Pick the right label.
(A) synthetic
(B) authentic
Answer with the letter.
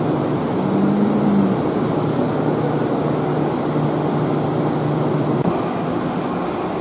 B